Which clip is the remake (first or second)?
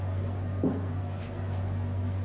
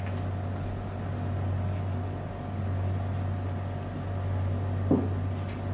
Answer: first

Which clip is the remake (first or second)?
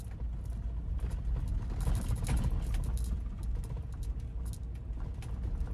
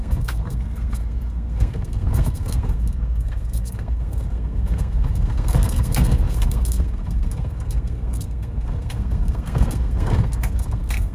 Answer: second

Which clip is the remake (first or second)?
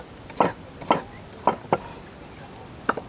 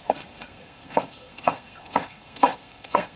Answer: second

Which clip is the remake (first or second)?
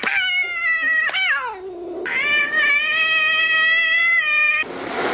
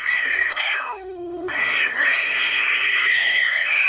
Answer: second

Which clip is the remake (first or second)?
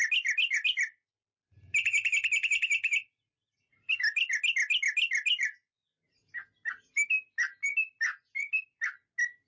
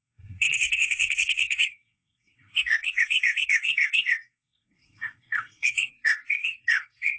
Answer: second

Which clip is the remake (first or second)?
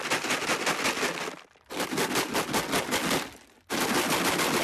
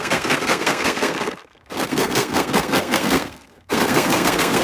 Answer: second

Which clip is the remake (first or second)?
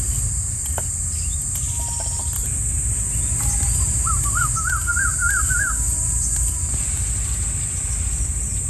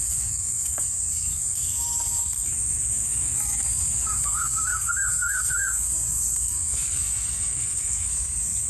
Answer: second